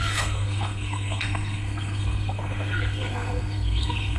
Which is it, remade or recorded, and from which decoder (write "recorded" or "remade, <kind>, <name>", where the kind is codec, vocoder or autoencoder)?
remade, codec, SNAC